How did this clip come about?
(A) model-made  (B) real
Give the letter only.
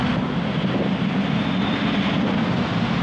B